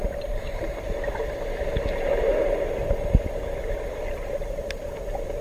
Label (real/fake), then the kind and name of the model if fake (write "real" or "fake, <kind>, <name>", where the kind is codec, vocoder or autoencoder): real